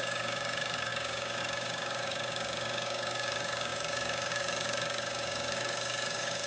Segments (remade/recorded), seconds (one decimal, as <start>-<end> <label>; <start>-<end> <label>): 0.0-6.5 remade